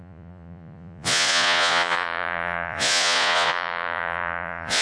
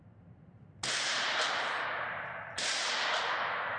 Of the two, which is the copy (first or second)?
first